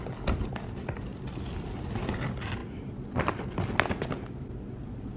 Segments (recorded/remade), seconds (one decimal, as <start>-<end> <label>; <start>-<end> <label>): 0.0-5.2 recorded